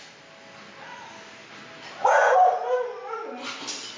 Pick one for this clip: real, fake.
real